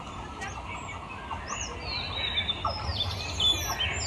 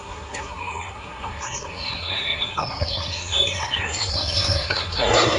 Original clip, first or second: first